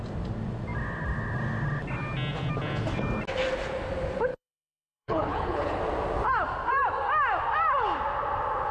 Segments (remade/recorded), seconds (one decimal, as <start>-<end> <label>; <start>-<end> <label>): 0.0-4.3 recorded; 4.3-5.8 remade; 5.8-8.7 recorded

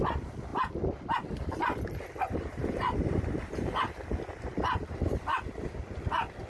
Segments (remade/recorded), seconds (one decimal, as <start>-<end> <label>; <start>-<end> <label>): 0.0-6.5 recorded

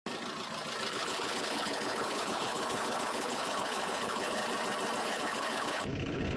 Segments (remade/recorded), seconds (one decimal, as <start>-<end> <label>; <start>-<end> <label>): 0.0-0.9 recorded; 0.9-4.4 remade; 4.4-5.0 recorded; 5.0-6.4 remade

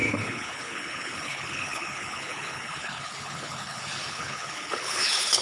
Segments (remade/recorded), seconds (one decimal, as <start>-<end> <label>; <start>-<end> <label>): 0.0-5.4 remade